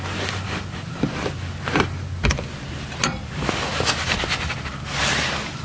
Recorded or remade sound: recorded